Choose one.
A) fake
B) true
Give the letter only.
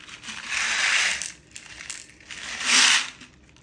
B